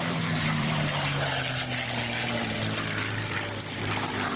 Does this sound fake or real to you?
fake